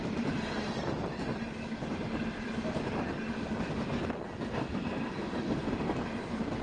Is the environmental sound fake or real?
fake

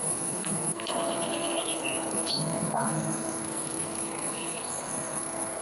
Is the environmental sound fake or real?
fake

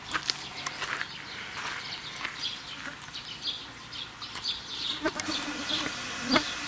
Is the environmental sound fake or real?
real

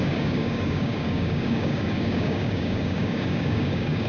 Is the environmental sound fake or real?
fake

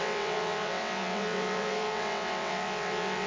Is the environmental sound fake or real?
fake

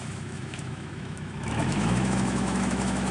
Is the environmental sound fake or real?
fake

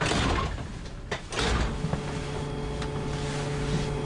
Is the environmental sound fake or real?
real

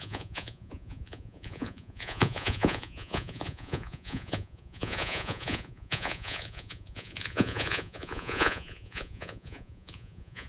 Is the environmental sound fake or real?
fake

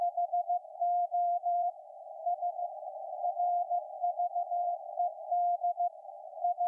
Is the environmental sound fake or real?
fake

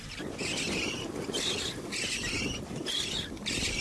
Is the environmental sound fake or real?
real